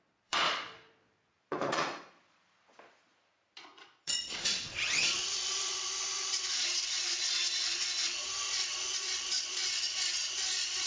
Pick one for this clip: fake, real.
fake